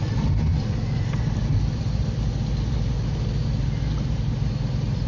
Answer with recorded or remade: recorded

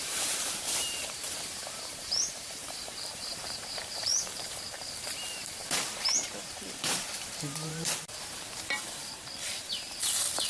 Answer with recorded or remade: remade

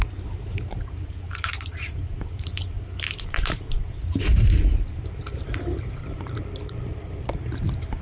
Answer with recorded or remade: remade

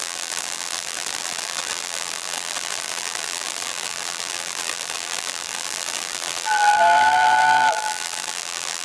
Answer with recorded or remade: remade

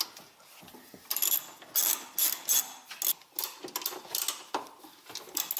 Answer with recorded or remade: recorded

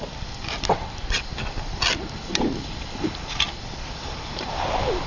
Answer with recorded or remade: recorded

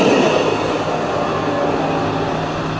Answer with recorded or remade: recorded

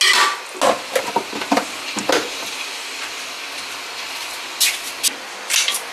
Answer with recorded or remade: recorded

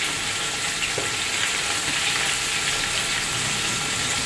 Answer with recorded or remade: recorded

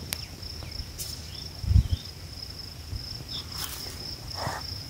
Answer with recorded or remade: recorded